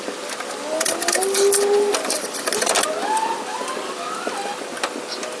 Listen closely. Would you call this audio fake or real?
real